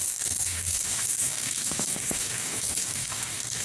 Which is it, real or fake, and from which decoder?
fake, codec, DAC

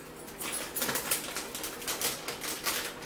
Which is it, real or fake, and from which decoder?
real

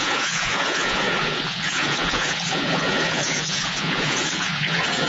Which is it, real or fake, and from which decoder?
fake, vocoder, Vocos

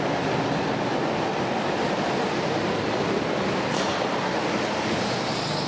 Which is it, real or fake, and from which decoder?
real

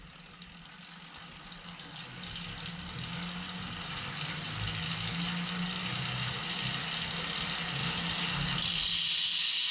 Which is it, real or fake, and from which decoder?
real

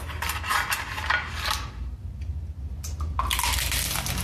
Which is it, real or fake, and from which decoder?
real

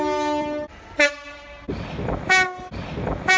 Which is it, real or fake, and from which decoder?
real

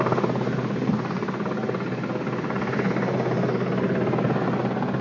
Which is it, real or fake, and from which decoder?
real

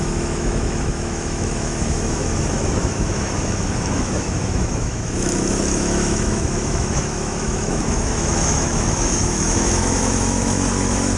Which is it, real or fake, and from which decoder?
fake, autoencoder, DAC-VAE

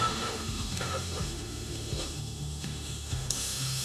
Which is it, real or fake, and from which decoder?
fake, autoencoder, DAC-VAE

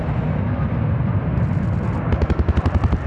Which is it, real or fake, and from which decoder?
real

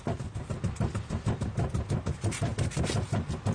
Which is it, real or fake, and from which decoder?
real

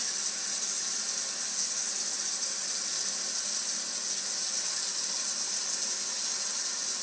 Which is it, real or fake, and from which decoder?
real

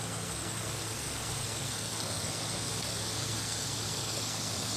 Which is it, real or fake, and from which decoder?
fake, codec, SNAC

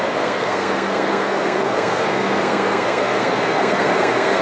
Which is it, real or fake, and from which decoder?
fake, codec, SNAC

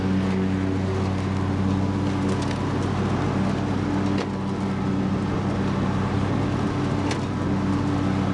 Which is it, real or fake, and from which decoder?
real